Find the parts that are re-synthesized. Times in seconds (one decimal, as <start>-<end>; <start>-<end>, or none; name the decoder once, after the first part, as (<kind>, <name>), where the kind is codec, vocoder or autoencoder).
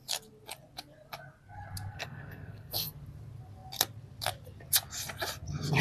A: 1.9-2.9 (codec, SNAC)